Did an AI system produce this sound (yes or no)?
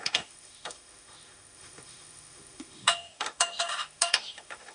yes